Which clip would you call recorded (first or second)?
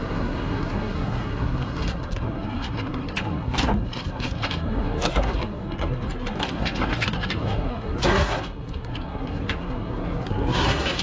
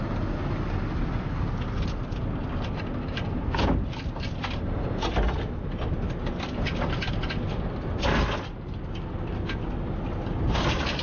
second